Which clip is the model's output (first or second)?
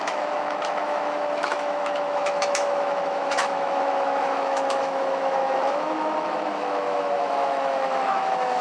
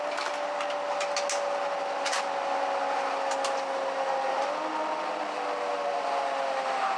first